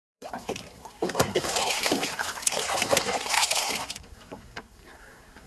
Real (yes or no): no